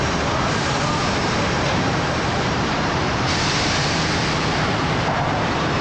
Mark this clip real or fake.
fake